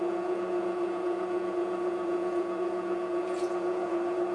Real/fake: fake